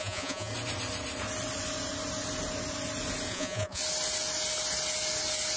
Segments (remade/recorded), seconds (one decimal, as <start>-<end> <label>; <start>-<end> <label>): 0.0-0.5 remade; 0.5-3.3 recorded; 3.3-3.8 remade; 3.8-5.6 recorded

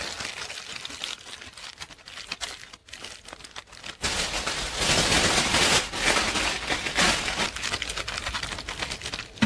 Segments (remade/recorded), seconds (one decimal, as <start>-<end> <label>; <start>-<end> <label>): 0.0-9.5 recorded

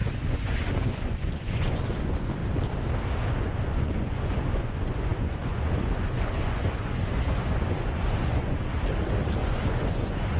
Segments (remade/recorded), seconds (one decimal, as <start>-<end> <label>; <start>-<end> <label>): 0.0-2.4 remade; 2.4-3.4 recorded; 3.4-8.7 remade; 8.7-9.4 recorded; 9.4-10.4 remade

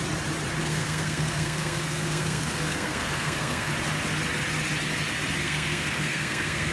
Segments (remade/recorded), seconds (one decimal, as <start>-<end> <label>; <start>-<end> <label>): 0.0-0.6 recorded; 0.6-3.7 remade; 3.7-5.4 recorded; 5.4-6.7 remade

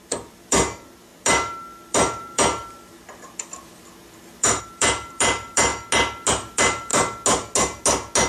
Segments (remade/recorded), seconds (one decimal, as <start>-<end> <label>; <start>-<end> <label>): 0.0-5.7 remade; 5.7-6.3 recorded; 6.3-6.9 remade; 6.9-8.3 recorded

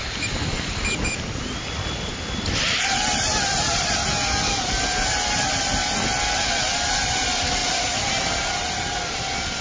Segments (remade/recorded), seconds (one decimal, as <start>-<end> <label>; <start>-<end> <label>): 0.0-2.1 remade; 2.1-4.6 recorded; 4.6-5.8 remade; 5.8-6.9 recorded; 6.9-7.6 remade; 7.6-9.6 recorded

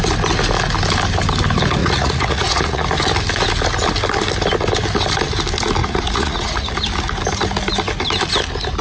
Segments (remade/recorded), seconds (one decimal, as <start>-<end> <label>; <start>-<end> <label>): 0.0-1.8 recorded; 1.8-2.8 remade; 2.8-5.8 recorded; 5.8-6.7 remade; 6.7-8.8 recorded